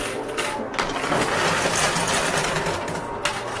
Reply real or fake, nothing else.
real